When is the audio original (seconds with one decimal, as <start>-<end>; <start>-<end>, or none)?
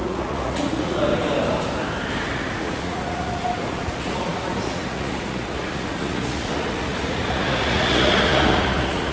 1.1-2.3